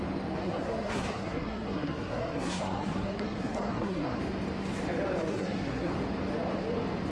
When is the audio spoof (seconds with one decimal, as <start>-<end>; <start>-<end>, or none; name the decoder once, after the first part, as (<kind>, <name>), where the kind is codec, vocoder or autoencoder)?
0.4-4.2 (codec, SNAC); 5.3-5.9